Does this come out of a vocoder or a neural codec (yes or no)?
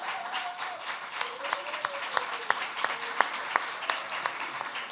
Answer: yes